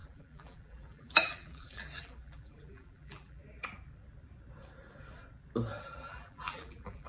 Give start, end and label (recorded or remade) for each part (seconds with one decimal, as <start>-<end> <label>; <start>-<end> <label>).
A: 0.0-3.4 remade; 3.4-5.8 recorded; 5.8-7.1 remade